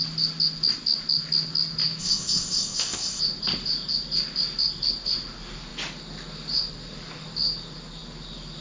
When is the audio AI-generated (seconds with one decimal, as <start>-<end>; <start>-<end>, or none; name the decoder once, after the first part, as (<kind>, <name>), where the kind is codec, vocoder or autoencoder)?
2.0-3.2 (codec, ZipCodec)